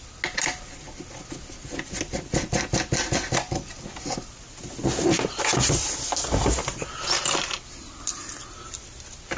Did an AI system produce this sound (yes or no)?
no